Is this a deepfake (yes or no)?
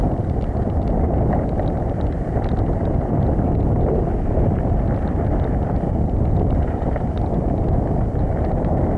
yes